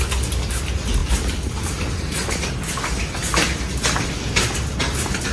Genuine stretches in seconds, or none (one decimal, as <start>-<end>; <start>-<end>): 0.0-5.3